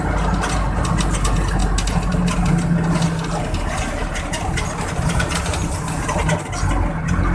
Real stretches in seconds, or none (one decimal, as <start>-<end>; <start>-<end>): 0.0-7.3